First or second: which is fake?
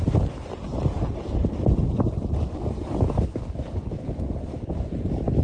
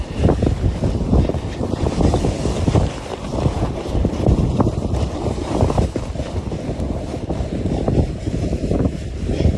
second